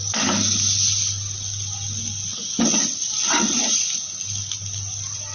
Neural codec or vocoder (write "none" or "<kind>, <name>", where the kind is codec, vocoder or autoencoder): none